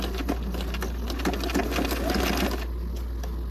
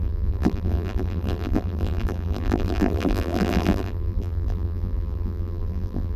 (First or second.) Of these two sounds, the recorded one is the first